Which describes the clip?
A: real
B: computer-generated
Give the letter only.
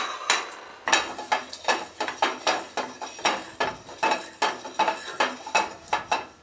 A